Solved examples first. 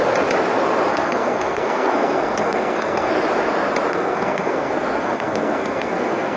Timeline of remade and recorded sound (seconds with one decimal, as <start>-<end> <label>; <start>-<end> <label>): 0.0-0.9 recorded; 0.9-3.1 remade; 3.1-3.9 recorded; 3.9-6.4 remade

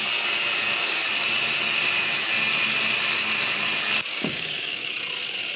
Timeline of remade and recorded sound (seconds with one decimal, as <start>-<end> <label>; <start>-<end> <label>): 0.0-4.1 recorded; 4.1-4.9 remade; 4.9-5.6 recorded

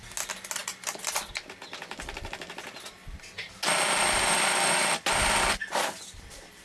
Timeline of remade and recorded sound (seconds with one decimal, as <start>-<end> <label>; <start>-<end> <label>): 0.0-6.6 recorded